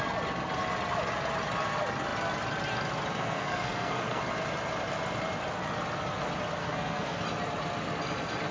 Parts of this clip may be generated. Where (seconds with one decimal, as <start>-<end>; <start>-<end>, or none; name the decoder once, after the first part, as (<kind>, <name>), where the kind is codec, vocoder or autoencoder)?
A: 3.1-4.2 (codec, SNAC); 6.6-7.2